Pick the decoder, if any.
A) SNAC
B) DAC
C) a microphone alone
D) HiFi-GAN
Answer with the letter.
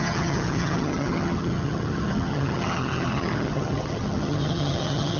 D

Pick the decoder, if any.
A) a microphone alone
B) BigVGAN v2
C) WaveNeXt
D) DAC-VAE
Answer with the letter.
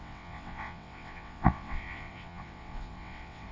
C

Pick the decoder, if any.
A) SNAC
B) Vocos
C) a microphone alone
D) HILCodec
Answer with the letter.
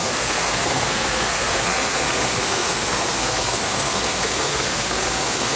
A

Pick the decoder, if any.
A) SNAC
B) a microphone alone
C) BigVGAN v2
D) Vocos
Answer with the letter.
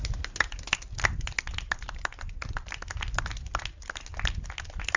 B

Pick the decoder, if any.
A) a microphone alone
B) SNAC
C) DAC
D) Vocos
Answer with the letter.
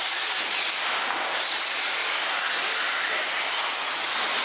A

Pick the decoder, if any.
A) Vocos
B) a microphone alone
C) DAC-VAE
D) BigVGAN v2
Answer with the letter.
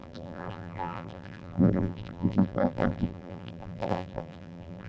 D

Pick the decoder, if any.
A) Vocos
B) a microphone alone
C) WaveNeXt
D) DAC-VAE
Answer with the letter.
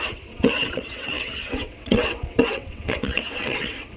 C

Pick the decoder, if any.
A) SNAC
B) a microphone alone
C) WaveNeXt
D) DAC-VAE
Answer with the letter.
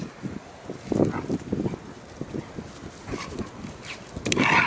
B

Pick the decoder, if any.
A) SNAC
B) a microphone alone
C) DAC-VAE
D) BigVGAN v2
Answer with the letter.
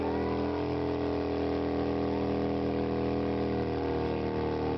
B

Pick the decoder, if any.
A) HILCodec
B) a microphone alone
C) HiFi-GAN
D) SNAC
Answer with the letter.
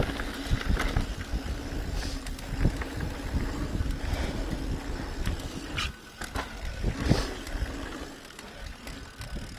B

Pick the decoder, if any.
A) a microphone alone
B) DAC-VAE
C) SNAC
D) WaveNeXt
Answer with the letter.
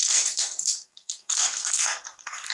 C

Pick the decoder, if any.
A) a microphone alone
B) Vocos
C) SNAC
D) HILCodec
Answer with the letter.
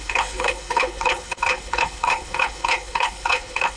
D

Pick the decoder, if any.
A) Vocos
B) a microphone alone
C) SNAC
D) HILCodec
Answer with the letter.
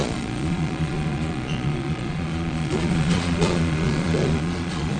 A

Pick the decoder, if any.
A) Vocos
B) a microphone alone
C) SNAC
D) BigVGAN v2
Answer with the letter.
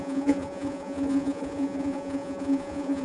A